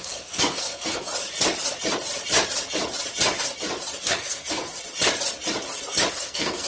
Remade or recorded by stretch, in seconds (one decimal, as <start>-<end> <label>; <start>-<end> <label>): 0.0-1.1 remade; 1.1-4.0 recorded; 4.0-4.7 remade; 4.7-6.1 recorded; 6.1-6.7 remade